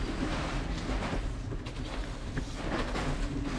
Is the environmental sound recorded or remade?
recorded